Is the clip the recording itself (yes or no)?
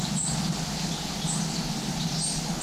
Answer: yes